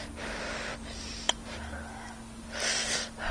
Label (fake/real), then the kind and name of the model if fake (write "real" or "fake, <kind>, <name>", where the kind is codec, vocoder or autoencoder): real